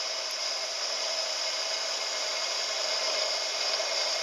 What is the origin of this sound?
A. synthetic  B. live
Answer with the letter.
B